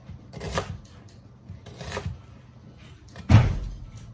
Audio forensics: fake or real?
real